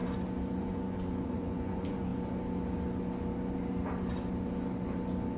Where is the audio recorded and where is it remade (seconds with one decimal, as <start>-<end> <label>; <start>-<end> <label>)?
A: 0.0-0.6 recorded; 0.6-2.1 remade; 2.1-5.4 recorded

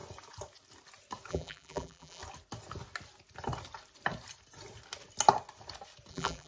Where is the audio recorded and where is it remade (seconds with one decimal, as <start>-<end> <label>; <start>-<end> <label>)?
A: 0.0-1.3 recorded; 1.3-2.2 remade; 2.2-6.1 recorded; 6.1-6.5 remade

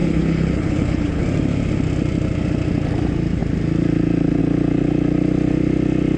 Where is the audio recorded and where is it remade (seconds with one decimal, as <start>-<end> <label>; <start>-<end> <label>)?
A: 0.0-1.2 remade; 1.2-6.2 recorded

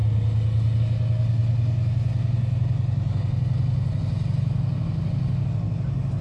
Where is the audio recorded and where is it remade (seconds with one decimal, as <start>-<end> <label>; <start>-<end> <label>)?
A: 0.0-6.2 recorded